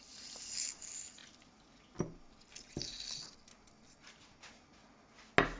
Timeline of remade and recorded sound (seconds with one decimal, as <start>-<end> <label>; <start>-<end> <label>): 0.0-5.6 recorded